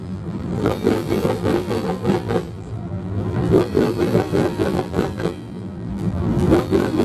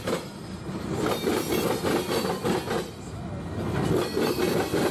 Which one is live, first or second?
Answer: second